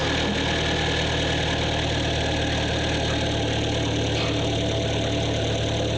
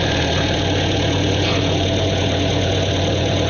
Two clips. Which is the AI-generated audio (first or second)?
second